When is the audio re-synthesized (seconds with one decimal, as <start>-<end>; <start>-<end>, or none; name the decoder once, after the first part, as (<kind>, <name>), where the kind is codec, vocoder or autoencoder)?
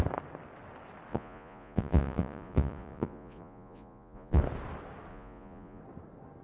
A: 1.1-4.4 (vocoder, Vocos); 5.1-5.8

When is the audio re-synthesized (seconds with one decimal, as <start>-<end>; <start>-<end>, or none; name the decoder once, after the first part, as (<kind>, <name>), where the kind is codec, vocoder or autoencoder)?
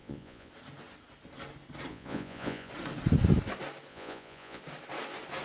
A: 0.0-0.5 (vocoder, Vocos); 1.9-2.7; 3.9-4.6